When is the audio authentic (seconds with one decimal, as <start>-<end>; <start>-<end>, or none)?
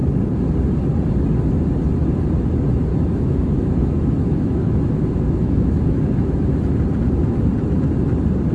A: 0.0-2.9; 6.8-8.5